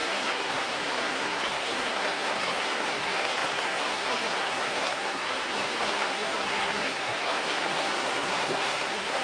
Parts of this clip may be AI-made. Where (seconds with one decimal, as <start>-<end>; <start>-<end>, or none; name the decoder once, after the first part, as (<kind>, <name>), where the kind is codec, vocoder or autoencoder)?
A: 0.0-9.2 (codec, SNAC)